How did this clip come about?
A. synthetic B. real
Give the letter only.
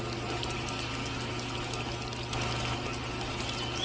B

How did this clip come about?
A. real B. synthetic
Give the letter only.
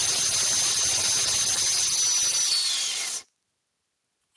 A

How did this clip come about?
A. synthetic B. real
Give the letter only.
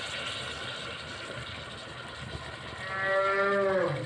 B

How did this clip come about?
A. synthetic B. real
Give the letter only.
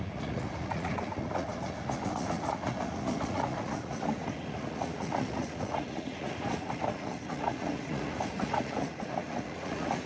A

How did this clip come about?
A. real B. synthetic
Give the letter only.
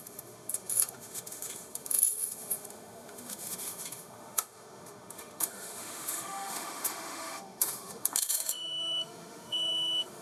B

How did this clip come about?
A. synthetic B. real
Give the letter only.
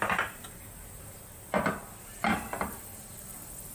B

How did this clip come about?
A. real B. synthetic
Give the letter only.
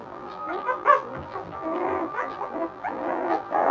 B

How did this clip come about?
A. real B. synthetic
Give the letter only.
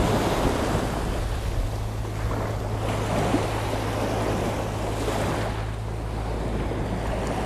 A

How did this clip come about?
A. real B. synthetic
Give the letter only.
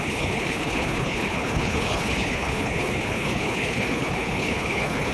B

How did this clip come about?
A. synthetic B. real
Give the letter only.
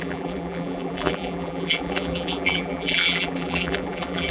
A